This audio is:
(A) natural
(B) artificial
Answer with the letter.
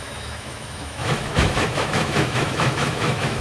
B